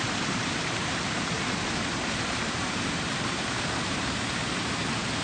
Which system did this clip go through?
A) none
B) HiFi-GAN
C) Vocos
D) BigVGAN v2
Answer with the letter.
D